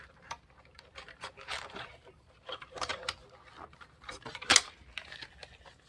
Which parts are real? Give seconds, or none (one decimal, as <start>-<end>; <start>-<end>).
2.9-3.4; 4.5-5.9